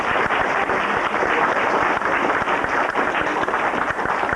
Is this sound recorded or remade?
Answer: recorded